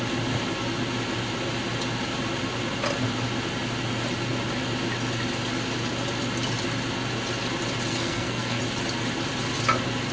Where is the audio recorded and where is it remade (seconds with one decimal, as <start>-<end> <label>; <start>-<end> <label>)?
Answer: 0.0-7.9 recorded; 7.9-8.6 remade; 8.6-10.1 recorded